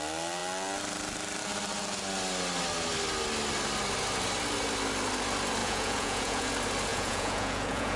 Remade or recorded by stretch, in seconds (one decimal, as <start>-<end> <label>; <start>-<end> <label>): 0.0-5.6 recorded; 5.6-6.5 remade; 6.5-6.9 recorded; 6.9-8.0 remade